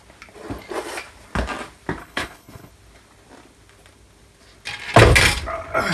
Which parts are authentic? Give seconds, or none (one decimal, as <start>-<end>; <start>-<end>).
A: 0.0-2.0; 2.7-5.9